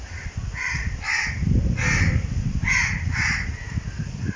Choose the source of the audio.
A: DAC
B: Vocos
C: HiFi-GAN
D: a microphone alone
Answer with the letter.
D